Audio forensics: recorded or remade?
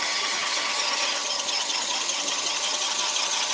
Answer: remade